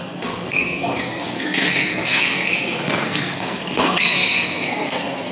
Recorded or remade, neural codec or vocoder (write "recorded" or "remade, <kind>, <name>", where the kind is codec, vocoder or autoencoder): remade, codec, SNAC